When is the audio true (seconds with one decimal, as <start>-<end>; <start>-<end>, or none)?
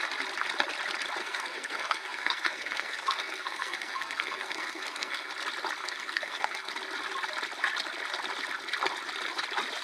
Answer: 0.0-1.2; 5.3-5.8; 6.7-9.8